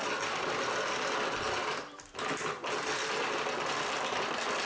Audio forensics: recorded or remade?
recorded